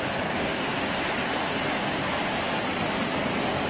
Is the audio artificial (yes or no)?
no